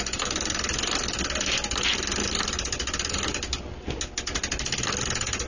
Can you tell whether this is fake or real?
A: real